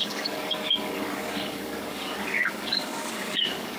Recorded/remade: remade